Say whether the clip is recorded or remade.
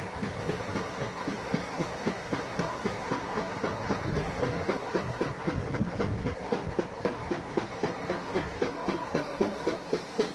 remade